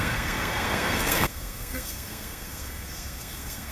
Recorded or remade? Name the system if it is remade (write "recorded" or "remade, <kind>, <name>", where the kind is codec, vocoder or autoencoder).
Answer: remade, codec, SNAC